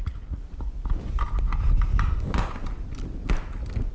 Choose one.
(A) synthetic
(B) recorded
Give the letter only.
B